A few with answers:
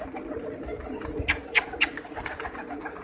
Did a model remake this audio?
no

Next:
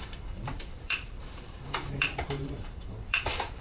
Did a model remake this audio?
yes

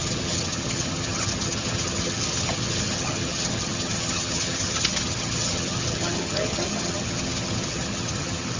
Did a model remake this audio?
yes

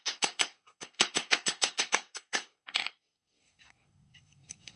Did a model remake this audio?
yes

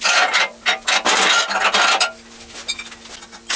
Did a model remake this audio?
no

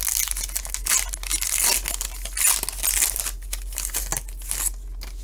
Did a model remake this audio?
no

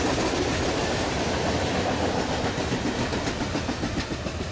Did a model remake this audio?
no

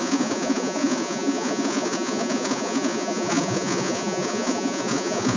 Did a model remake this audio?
yes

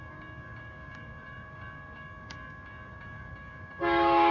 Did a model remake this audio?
yes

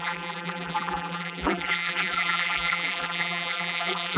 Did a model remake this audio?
yes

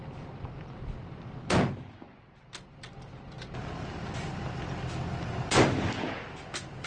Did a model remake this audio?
no